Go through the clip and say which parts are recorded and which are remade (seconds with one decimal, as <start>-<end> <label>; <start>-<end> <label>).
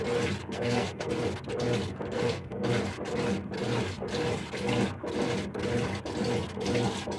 0.0-0.4 recorded; 0.4-1.1 remade; 1.1-1.9 recorded; 1.9-2.7 remade; 2.7-7.2 recorded